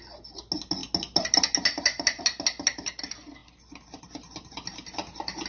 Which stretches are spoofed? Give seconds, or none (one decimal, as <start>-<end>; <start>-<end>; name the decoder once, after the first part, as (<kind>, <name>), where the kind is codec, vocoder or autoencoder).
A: none